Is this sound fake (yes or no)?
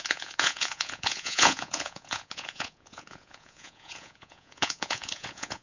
yes